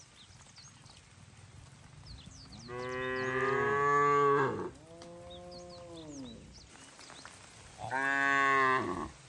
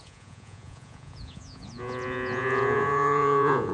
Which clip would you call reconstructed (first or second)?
second